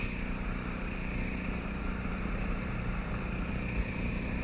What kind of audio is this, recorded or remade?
remade